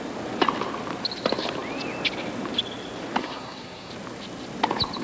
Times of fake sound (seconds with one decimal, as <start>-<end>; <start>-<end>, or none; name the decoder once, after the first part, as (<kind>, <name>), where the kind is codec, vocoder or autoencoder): 3.2-3.9 (codec, SNAC)